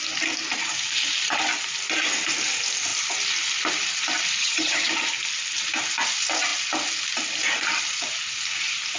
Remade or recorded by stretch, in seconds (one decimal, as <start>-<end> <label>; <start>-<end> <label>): 0.0-4.4 recorded; 4.4-4.9 remade; 4.9-9.0 recorded